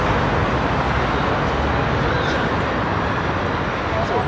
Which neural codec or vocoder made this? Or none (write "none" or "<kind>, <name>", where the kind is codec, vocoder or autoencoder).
none